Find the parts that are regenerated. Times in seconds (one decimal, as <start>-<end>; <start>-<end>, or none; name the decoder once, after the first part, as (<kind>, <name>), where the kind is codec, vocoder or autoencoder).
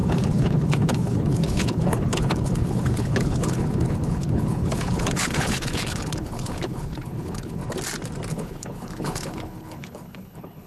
0.0-7.6 (codec, HILCodec); 8.3-10.7